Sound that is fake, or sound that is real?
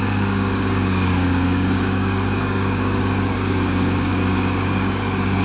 fake